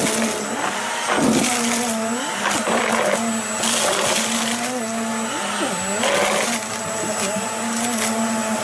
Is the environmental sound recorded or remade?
recorded